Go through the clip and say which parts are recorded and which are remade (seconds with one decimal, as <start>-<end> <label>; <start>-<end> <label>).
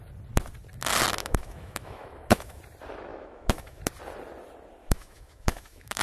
0.0-1.2 recorded; 1.2-2.6 remade; 2.6-3.1 recorded; 3.1-3.8 remade; 3.8-4.8 recorded; 4.8-6.0 remade